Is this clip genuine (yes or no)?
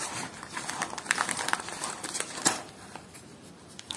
no